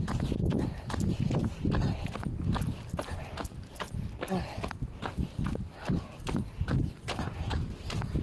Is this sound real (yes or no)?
yes